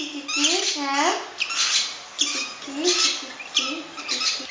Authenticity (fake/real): real